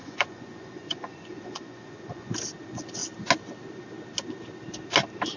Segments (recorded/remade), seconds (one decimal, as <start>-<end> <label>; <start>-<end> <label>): 0.0-2.3 remade; 2.3-5.4 recorded